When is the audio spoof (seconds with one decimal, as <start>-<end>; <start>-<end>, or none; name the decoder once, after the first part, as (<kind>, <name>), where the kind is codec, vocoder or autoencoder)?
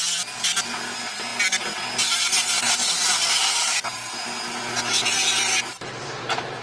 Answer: none